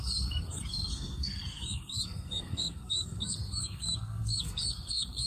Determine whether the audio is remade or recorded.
remade